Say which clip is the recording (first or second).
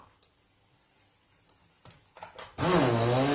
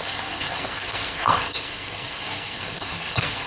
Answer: first